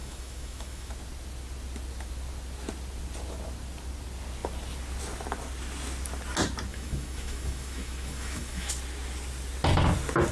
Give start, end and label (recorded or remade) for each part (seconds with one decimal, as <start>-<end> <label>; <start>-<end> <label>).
0.0-0.9 remade; 0.9-6.7 recorded; 6.7-8.7 remade; 8.7-10.3 recorded